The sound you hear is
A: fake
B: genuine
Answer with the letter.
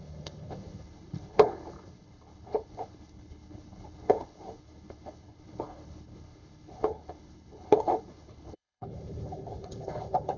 A